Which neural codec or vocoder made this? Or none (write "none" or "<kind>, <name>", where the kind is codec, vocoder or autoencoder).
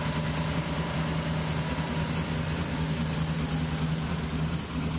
none